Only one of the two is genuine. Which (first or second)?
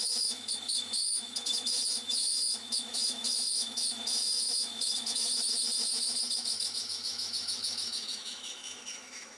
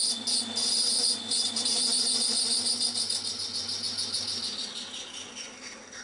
second